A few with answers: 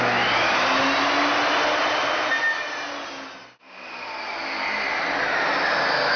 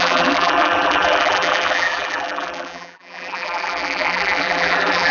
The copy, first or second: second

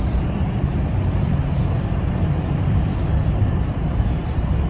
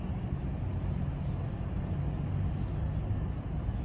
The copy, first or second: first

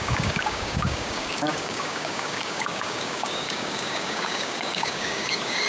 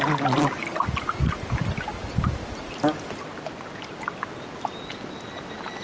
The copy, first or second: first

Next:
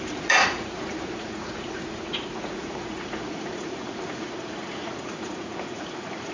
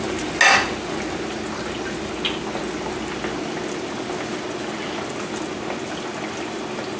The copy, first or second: first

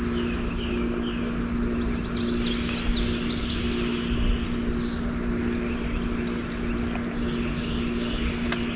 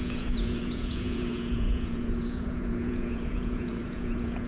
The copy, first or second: second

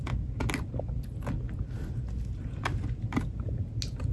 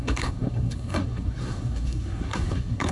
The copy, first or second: second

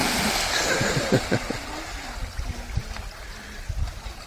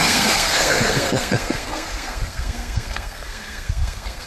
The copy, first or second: second